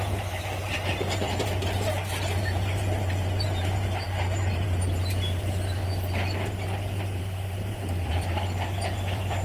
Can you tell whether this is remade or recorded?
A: remade